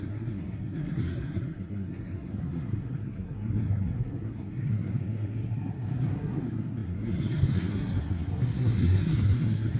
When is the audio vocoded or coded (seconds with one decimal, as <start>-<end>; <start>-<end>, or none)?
0.0-9.8